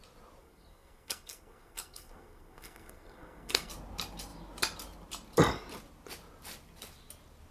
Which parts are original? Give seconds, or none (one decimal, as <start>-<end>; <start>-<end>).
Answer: 0.0-0.4; 3.7-7.5

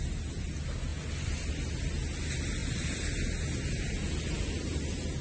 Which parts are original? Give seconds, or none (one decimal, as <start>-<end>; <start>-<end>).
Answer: 0.0-5.2

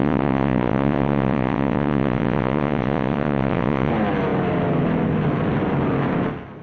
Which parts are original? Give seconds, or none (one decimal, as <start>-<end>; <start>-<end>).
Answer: 3.9-6.6

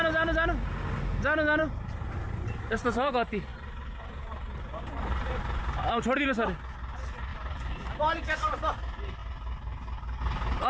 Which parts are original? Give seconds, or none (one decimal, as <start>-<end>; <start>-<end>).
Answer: 0.0-1.6; 3.1-3.5; 6.0-7.3; 8.0-10.7

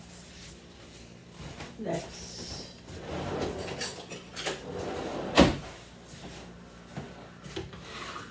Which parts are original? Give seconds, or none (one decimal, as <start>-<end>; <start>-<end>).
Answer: 0.0-5.1; 5.6-8.3

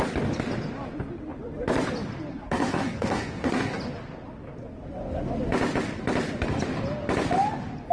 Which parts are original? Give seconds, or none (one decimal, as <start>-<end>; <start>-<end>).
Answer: 0.0-2.3; 3.8-7.9

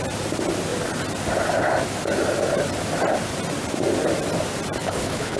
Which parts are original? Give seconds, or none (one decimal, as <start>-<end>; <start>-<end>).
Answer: 0.0-4.8